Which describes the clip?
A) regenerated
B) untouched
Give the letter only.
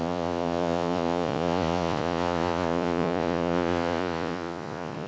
A